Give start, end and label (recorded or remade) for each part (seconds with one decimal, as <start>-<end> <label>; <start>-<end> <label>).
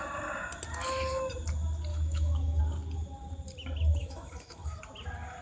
0.0-1.9 recorded; 1.9-2.6 remade; 2.6-4.0 recorded; 4.0-4.8 remade; 4.8-5.4 recorded